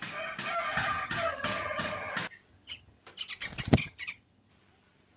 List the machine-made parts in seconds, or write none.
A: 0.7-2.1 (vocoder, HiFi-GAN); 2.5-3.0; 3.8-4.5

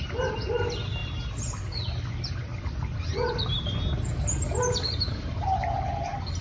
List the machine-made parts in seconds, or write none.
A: none

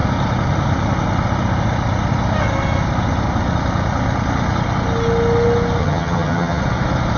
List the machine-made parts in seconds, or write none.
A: 5.8-6.6 (vocoder, HiFi-GAN)

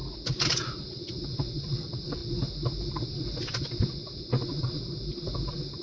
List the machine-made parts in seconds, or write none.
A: none

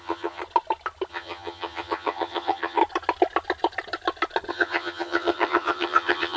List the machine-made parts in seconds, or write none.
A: 0.0-0.4 (vocoder, HiFi-GAN); 1.1-2.8; 4.5-6.4

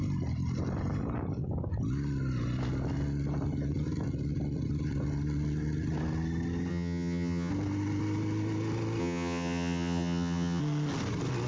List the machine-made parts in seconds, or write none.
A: 6.7-7.5 (vocoder, HiFi-GAN); 9.0-10.6